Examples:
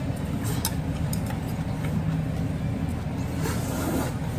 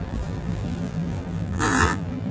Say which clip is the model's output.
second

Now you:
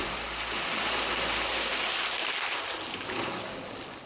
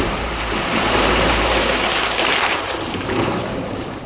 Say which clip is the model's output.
second